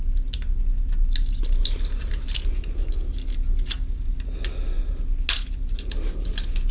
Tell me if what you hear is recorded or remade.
recorded